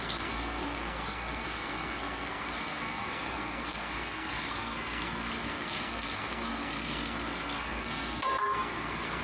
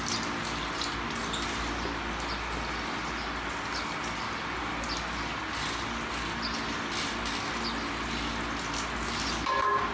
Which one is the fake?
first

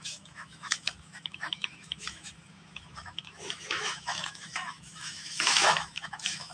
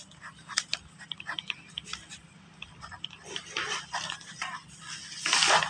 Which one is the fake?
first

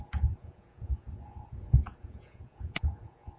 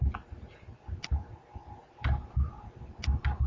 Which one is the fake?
first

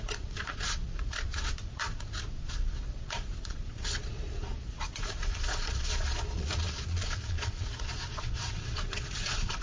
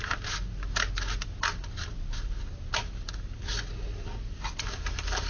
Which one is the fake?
first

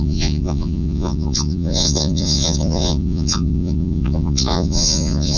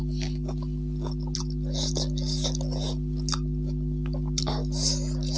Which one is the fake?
first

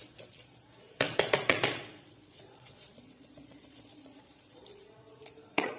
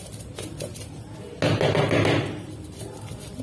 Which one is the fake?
first